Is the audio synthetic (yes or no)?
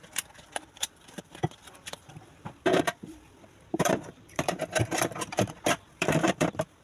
yes